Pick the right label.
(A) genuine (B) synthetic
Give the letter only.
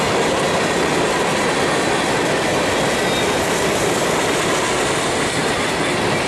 A